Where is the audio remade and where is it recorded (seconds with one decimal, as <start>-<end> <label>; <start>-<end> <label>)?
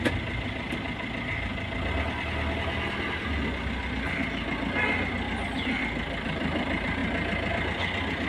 0.0-1.5 remade; 1.5-5.8 recorded; 5.8-7.0 remade; 7.0-7.5 recorded; 7.5-8.3 remade